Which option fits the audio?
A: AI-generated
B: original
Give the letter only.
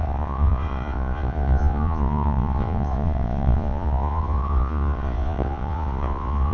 A